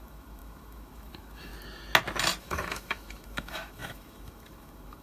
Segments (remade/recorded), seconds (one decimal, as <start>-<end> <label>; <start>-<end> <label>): 0.0-1.5 remade; 1.5-2.4 recorded; 2.4-5.0 remade

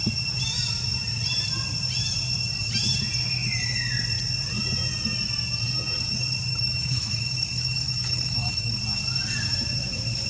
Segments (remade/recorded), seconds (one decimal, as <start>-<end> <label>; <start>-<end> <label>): 0.0-6.5 recorded; 6.5-8.8 remade; 8.8-10.3 recorded